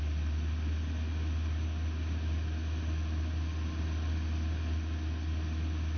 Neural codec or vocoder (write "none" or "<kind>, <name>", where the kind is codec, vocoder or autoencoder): none